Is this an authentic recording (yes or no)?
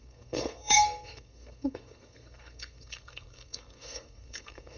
no